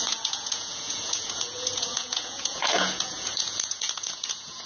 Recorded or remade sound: remade